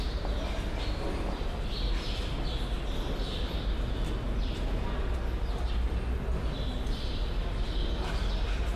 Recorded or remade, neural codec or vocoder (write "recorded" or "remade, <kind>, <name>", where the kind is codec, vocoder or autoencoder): recorded